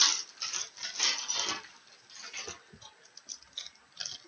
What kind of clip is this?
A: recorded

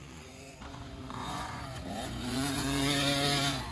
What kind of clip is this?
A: remade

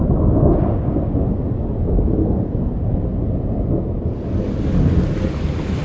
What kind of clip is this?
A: recorded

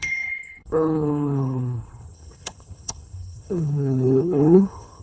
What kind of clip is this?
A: remade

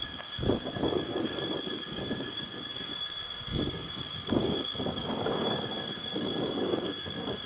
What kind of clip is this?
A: remade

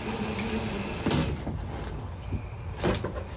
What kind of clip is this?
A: recorded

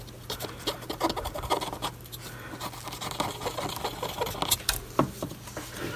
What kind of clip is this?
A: recorded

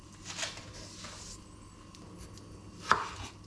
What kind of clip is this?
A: recorded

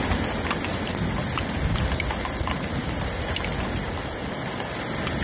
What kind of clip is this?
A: recorded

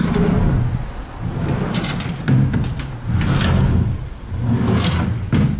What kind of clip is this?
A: recorded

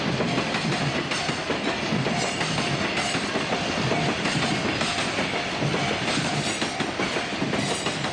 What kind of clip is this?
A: recorded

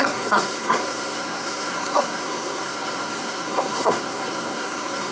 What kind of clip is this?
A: remade